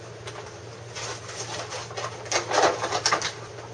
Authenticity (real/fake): real